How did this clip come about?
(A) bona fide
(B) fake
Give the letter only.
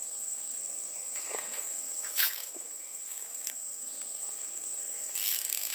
B